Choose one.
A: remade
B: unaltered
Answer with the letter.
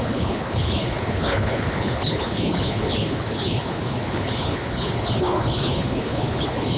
A